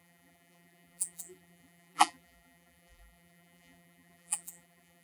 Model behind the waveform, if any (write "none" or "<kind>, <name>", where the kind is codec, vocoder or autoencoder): vocoder, BigVGAN v2